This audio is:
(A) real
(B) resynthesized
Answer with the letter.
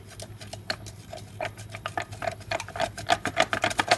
A